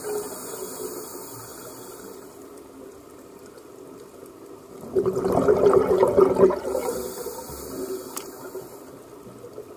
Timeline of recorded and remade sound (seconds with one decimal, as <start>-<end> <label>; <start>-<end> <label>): 0.0-9.8 recorded